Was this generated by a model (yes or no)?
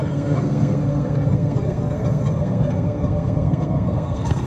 yes